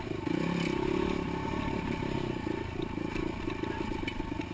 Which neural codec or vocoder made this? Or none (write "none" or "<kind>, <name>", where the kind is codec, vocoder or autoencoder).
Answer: none